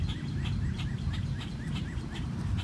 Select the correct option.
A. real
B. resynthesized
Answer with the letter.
B